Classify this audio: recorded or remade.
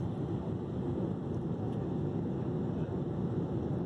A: recorded